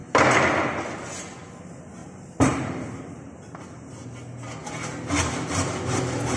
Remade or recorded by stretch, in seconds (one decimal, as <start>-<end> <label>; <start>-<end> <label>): 0.0-1.6 recorded; 1.6-6.4 remade